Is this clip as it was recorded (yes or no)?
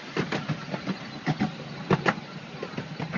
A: yes